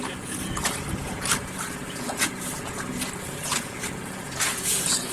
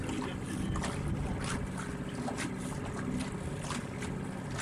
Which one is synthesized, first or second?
first